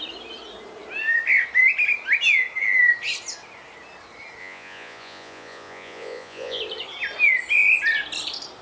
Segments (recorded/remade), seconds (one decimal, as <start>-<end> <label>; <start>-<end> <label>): 0.0-4.4 recorded; 4.4-6.6 remade; 6.6-8.6 recorded